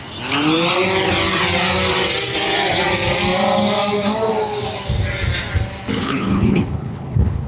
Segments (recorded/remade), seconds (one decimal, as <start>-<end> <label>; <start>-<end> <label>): 0.0-6.0 recorded; 6.0-7.5 remade